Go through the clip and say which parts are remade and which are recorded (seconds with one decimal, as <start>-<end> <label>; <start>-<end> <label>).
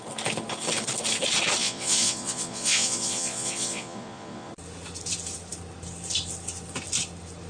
0.0-1.6 recorded; 1.6-4.5 remade; 4.5-7.5 recorded